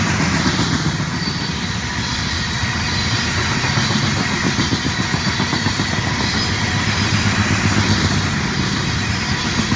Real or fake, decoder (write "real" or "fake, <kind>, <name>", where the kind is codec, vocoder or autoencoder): real